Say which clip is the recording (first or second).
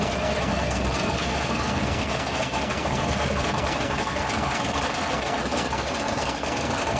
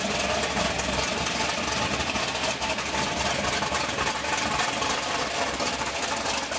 second